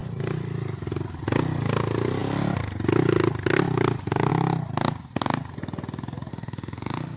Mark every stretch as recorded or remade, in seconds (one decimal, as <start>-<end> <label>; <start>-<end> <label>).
0.0-6.3 recorded; 6.3-7.2 remade